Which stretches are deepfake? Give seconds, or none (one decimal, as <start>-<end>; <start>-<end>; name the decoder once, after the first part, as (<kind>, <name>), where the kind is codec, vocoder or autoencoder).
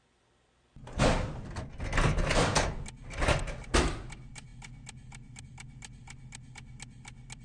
none